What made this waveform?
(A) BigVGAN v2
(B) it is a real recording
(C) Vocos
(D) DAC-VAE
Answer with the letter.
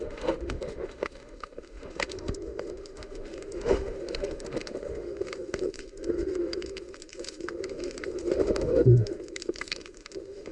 D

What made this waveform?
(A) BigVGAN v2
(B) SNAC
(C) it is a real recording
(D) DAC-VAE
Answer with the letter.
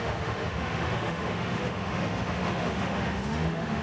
D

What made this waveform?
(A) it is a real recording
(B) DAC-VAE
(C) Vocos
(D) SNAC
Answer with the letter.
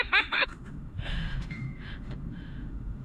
B